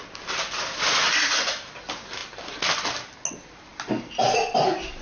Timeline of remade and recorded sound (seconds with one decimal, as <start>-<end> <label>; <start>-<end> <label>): 0.0-5.0 recorded